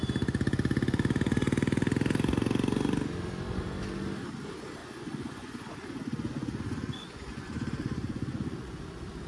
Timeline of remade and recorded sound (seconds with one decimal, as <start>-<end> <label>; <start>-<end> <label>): 0.0-4.8 recorded; 4.8-8.8 remade; 8.8-9.3 recorded